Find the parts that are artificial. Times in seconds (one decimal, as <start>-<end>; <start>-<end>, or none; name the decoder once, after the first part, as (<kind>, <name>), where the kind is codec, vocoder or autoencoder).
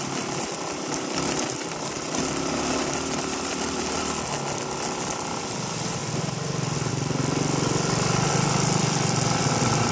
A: 0.0-6.0 (vocoder, BigVGAN v2); 6.9-9.9